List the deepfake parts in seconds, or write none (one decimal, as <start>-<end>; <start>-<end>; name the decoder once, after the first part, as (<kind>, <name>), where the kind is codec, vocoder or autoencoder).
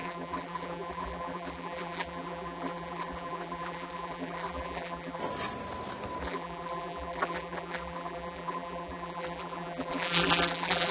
0.0-5.2 (vocoder, BigVGAN v2); 6.2-10.9